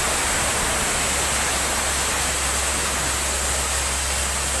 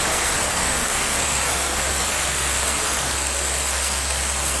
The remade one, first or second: second